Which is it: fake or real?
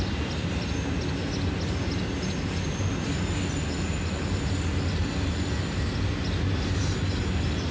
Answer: real